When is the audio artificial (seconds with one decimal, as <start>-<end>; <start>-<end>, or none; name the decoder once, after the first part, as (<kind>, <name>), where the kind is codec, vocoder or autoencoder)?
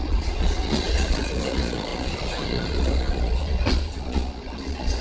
0.0-5.0 (vocoder, Vocos)